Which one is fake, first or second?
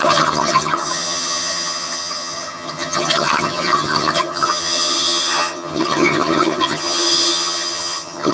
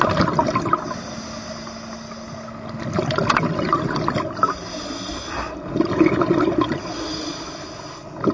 first